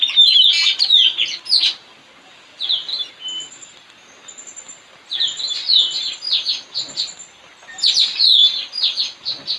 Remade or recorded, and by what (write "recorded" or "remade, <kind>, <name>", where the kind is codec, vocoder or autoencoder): recorded